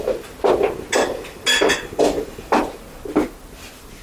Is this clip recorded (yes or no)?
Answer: yes